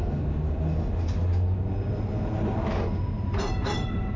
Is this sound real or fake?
real